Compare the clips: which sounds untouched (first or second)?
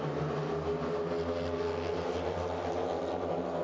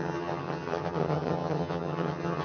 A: first